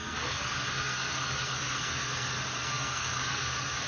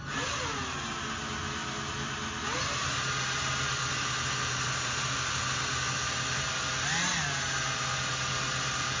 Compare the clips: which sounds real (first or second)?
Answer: second